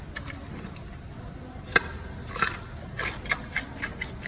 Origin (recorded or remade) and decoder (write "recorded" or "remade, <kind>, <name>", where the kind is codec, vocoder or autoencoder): recorded